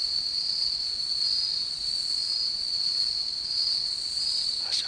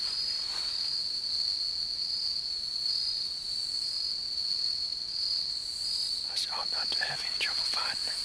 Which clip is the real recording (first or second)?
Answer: second